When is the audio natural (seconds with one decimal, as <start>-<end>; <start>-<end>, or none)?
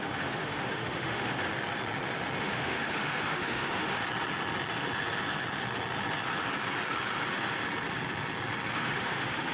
1.5-2.4; 4.0-8.7